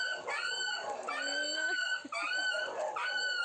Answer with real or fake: real